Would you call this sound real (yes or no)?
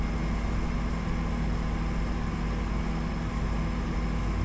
yes